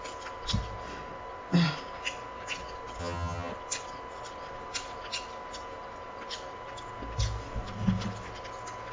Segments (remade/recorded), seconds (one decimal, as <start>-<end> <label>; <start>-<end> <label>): 0.0-3.0 recorded; 3.0-3.5 remade; 3.5-8.9 recorded